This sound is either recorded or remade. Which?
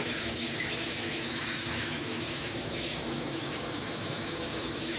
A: remade